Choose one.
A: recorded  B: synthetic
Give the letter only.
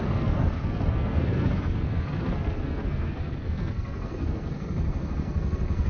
B